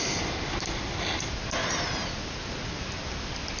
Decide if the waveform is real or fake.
real